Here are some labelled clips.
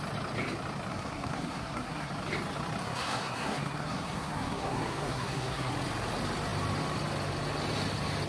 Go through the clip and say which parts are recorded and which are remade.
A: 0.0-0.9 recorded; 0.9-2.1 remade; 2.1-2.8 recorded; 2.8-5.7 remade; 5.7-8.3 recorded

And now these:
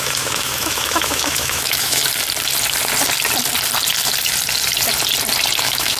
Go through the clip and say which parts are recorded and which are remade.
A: 0.0-2.0 remade; 2.0-5.6 recorded; 5.6-6.0 remade

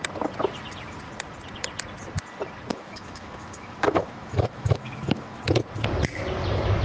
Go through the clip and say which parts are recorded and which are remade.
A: 0.0-2.7 recorded; 2.7-5.4 remade; 5.4-6.8 recorded

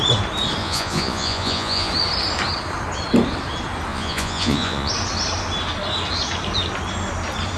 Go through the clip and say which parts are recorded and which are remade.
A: 0.0-0.6 recorded; 0.6-1.9 remade; 1.9-3.9 recorded; 3.9-4.9 remade; 4.9-7.6 recorded